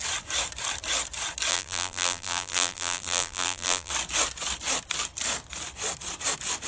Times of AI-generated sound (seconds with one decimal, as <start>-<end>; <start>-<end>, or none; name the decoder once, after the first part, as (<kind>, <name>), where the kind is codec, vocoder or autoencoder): 1.5-3.9 (vocoder, BigVGAN v2)